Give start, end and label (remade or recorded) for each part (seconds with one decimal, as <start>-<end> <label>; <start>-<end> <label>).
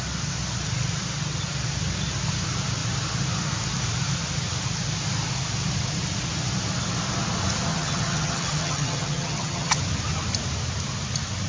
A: 0.0-7.7 recorded; 7.7-9.8 remade; 9.8-11.5 recorded